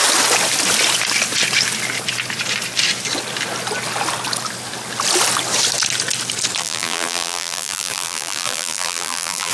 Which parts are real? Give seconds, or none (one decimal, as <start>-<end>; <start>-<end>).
0.0-6.6